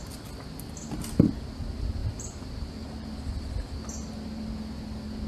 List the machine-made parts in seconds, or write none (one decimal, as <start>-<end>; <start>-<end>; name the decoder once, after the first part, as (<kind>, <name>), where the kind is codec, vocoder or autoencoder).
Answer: none